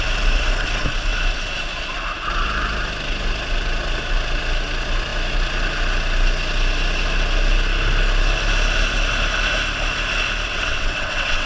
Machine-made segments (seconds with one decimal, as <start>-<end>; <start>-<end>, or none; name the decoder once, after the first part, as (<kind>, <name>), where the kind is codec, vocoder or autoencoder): 10.5-11.5 (vocoder, WaveNeXt)